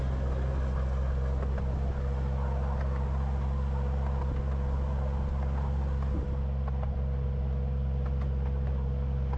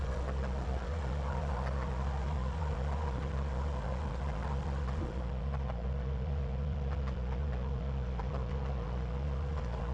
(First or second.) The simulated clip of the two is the second